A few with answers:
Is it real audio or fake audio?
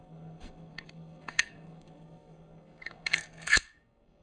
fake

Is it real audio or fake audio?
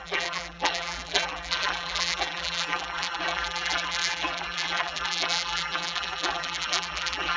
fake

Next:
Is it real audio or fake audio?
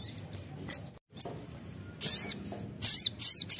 real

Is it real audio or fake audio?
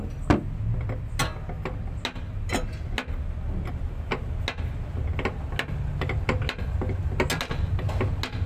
real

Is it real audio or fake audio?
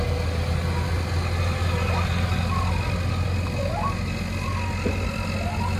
real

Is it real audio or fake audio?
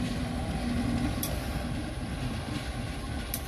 real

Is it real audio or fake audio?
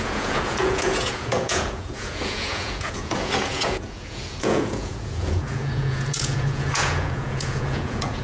fake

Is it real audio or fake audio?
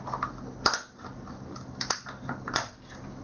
real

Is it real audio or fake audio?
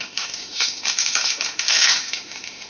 fake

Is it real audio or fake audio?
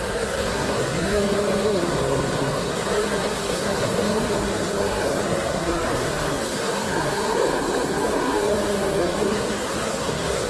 fake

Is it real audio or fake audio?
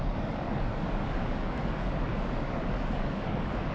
fake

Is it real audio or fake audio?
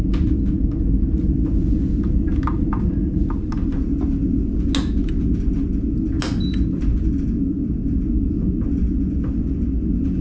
real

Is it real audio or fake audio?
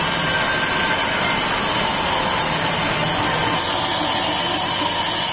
real